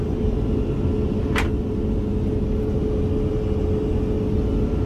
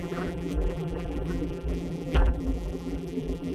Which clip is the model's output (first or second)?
second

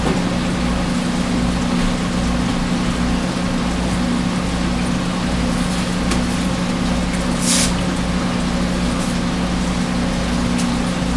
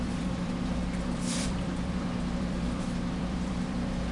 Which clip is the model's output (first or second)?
second